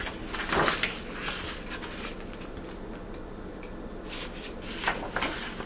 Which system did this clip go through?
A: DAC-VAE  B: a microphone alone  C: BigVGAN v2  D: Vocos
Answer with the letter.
B